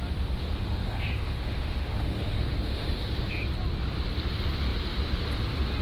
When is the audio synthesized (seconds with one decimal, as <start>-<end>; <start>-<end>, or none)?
0.4-3.0